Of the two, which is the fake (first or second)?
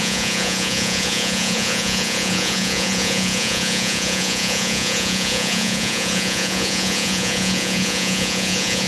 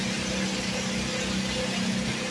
first